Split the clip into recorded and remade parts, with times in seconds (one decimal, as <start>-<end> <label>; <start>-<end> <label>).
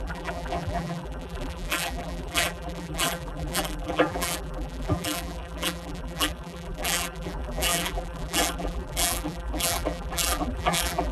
0.0-11.1 remade